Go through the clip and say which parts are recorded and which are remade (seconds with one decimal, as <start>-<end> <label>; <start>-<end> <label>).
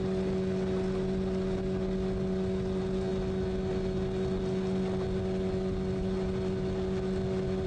0.0-7.7 recorded